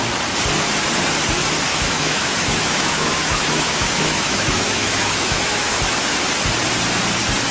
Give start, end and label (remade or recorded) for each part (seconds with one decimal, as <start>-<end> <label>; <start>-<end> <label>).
0.0-1.7 recorded; 1.7-6.2 remade; 6.2-7.5 recorded